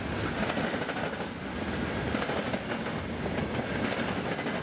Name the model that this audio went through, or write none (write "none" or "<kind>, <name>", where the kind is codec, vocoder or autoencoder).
none